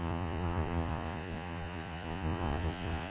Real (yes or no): no